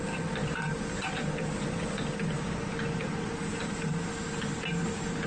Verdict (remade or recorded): recorded